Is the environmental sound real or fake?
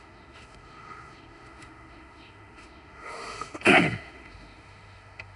fake